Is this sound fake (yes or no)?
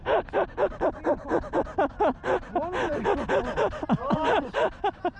no